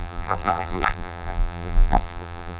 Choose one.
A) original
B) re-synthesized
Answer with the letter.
B